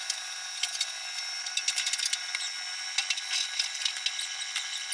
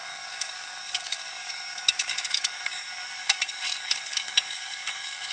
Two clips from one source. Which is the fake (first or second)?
second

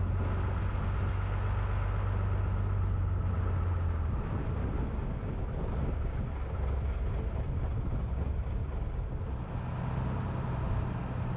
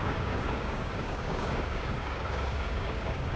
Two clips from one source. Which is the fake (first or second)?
second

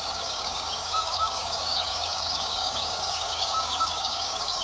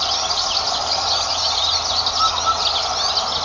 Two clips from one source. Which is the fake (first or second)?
first